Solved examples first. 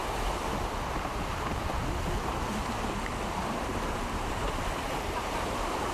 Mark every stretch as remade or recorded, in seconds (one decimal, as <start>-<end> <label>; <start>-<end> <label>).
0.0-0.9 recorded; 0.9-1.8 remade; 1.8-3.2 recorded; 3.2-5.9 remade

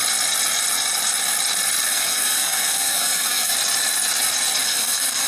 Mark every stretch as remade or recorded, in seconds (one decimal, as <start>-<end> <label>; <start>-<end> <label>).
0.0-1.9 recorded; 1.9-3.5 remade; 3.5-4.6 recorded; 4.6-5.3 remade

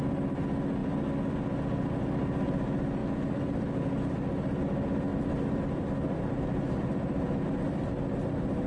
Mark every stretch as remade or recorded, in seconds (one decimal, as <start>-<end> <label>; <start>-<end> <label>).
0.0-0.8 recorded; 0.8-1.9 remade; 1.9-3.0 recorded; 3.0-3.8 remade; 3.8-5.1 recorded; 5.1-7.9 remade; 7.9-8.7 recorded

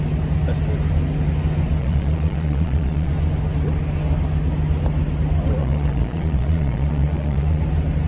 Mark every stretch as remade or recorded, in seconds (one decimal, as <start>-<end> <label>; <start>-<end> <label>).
0.0-1.8 recorded; 1.8-3.1 remade; 3.1-5.6 recorded; 5.6-7.6 remade; 7.6-8.1 recorded

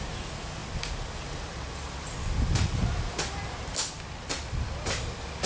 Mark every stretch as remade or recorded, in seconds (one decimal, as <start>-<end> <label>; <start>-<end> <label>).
0.0-5.5 recorded

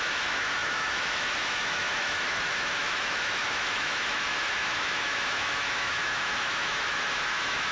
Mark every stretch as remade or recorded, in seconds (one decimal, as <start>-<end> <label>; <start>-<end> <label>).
0.0-7.7 remade

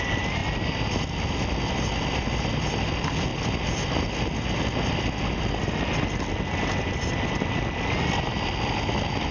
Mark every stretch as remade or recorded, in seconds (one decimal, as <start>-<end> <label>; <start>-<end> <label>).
0.0-9.3 recorded

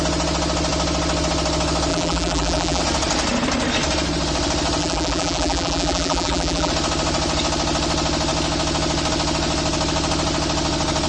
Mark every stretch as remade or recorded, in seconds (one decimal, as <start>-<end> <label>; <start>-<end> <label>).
0.0-1.9 recorded; 1.9-2.8 remade; 2.8-4.8 recorded; 4.8-6.7 remade; 6.7-11.1 recorded